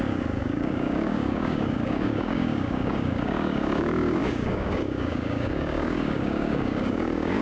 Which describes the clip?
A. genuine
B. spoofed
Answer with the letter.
B